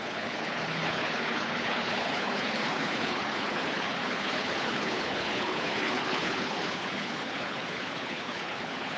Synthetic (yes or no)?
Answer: yes